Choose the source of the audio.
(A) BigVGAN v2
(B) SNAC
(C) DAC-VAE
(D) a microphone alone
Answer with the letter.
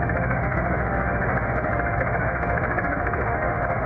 C